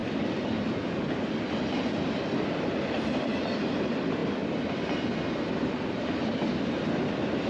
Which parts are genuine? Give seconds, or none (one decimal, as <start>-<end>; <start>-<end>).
0.0-7.5